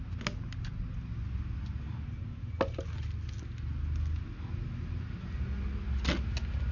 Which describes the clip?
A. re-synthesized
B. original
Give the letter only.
B